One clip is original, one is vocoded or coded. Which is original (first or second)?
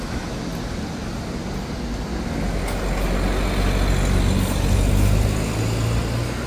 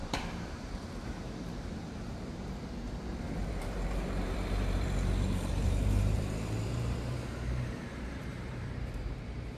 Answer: first